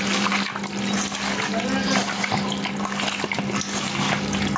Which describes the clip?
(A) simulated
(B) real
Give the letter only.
B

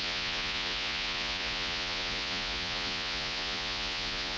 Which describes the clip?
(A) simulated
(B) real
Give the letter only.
A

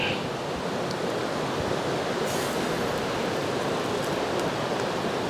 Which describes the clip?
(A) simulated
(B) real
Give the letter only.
B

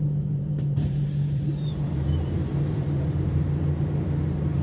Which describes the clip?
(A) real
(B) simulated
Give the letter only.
B